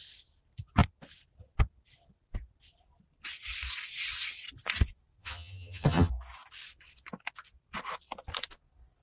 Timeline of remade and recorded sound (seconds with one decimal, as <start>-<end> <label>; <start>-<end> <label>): 0.0-5.2 recorded; 5.2-6.1 remade; 6.1-9.0 recorded